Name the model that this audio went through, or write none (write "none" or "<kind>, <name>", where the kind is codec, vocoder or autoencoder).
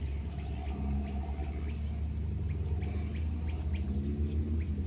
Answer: none